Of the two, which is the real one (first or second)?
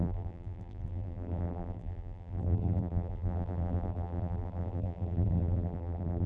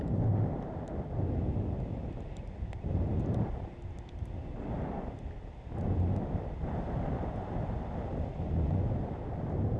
second